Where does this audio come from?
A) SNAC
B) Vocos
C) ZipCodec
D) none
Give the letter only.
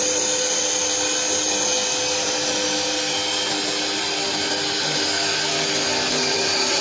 D